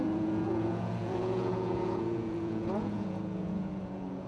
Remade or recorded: remade